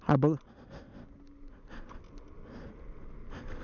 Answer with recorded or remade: recorded